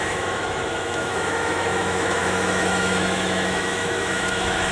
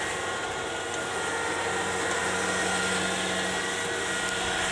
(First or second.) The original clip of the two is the second